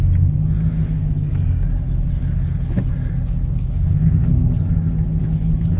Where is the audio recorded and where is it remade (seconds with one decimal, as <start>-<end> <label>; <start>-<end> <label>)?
0.0-2.2 recorded; 2.2-2.9 remade; 2.9-3.6 recorded; 3.6-4.3 remade; 4.3-5.2 recorded; 5.2-5.8 remade